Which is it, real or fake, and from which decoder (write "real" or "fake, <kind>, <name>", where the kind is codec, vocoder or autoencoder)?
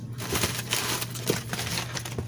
real